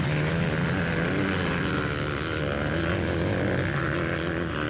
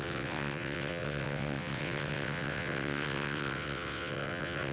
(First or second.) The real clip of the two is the first